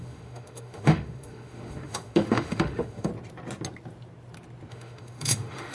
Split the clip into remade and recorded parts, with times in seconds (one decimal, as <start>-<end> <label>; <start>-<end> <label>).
0.0-3.1 remade; 3.1-4.7 recorded; 4.7-5.7 remade